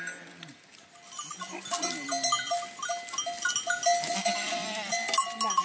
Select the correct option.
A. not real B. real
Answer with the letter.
B